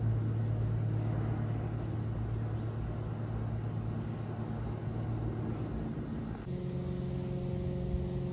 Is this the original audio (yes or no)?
yes